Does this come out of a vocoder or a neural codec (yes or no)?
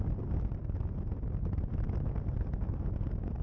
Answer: no